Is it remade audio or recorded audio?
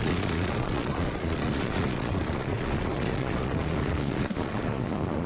remade